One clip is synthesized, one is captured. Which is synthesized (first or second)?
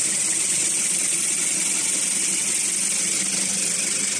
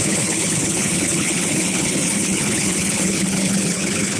second